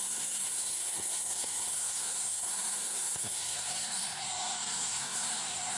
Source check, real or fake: fake